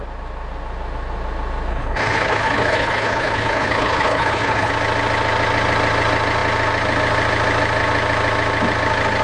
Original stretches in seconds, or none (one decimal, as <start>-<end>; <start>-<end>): 0.0-1.7; 4.7-9.2